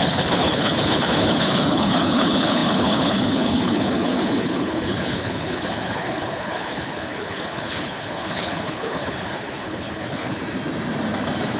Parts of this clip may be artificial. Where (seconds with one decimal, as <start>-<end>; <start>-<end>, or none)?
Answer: 0.0-10.4